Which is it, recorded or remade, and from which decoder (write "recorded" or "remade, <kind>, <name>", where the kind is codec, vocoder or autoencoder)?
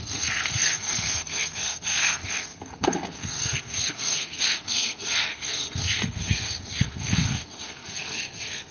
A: remade, codec, SNAC